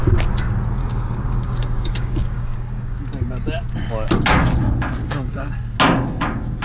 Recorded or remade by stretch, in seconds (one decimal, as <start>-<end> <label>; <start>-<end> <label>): 0.0-0.8 recorded; 0.8-3.0 remade; 3.0-5.0 recorded; 5.0-5.5 remade; 5.5-6.6 recorded